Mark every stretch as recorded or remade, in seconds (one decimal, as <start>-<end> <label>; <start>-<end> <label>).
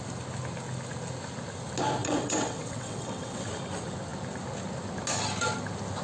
0.0-2.0 recorded; 2.0-3.5 remade; 3.5-6.0 recorded